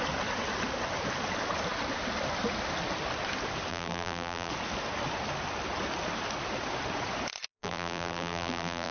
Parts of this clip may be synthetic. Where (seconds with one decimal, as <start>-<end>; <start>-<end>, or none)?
3.7-4.5; 7.5-8.9